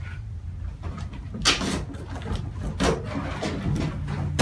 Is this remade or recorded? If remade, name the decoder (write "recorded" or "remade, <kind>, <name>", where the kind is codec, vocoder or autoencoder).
recorded